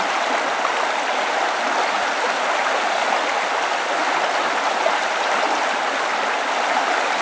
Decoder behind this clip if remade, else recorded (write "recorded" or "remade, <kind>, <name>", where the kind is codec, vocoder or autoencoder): recorded